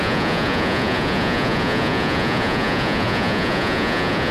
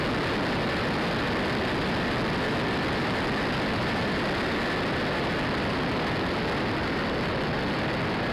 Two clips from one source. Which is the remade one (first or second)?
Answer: first